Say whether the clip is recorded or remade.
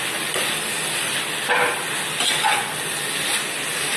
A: recorded